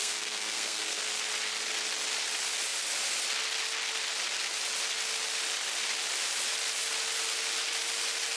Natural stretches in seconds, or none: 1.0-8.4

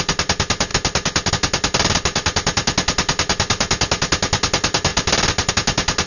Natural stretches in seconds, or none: 0.0-6.1

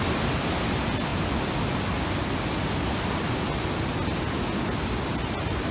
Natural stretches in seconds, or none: 0.0-5.7